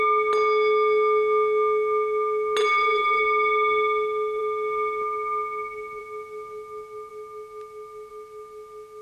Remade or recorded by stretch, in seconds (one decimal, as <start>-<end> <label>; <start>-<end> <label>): 0.0-2.6 recorded; 2.6-3.2 remade; 3.2-9.0 recorded